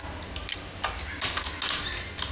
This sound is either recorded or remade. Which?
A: recorded